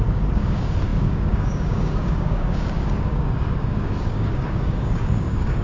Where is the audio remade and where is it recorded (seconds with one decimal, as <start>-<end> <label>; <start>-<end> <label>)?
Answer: 0.0-5.6 remade